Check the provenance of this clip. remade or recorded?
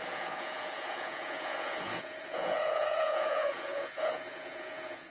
remade